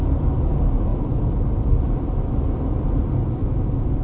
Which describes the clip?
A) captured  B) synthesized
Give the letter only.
A